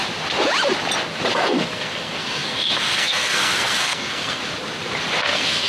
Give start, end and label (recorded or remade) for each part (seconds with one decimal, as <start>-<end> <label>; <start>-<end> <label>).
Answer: 0.0-1.3 recorded; 1.3-4.4 remade; 4.4-5.2 recorded; 5.2-5.7 remade